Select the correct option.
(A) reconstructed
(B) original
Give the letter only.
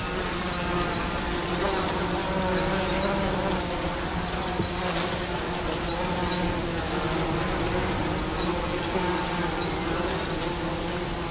B